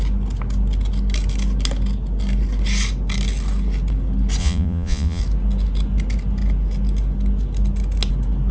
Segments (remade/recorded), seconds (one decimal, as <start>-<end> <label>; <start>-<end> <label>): 0.0-4.4 recorded; 4.4-5.2 remade; 5.2-8.5 recorded